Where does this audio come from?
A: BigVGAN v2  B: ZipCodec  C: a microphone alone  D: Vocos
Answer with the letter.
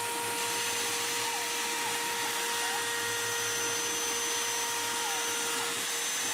C